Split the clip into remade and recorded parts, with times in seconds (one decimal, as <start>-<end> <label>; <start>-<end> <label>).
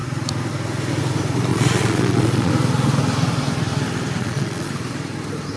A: 0.0-1.5 recorded; 1.5-2.5 remade; 2.5-4.2 recorded; 4.2-4.7 remade; 4.7-5.6 recorded